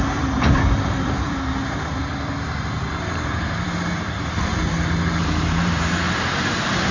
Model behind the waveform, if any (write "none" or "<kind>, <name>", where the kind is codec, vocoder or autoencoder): vocoder, BigVGAN v2